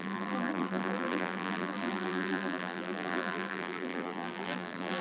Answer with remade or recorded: remade